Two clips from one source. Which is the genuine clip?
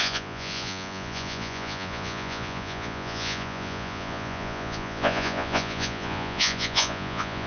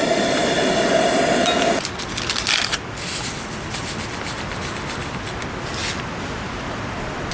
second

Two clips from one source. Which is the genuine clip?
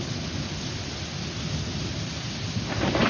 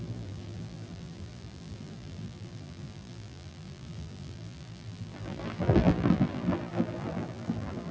first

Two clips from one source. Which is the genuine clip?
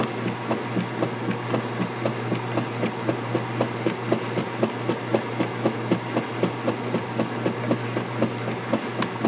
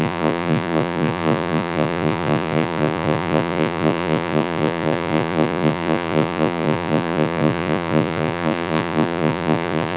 first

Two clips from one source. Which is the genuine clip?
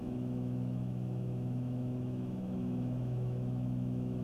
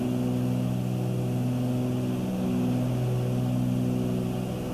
second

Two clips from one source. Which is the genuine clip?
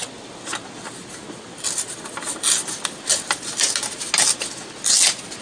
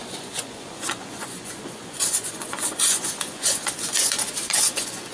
first